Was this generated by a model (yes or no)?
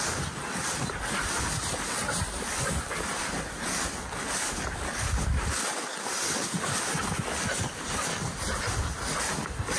no